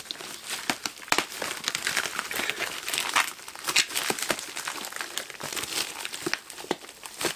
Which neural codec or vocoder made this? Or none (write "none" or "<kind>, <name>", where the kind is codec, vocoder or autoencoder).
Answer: none